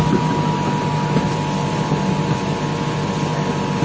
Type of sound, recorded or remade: recorded